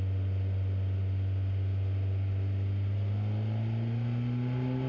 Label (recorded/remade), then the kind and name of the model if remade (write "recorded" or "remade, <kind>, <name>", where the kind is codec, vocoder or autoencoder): recorded